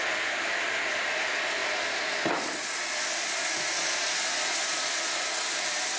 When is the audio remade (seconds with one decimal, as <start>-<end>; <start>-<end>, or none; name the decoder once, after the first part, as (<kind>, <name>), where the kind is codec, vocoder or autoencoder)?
none